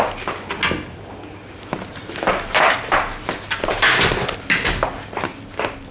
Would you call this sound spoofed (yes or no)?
no